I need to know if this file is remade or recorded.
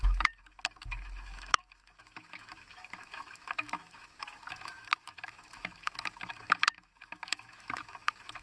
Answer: remade